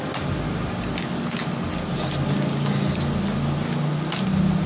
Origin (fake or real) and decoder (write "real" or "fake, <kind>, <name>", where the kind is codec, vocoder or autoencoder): real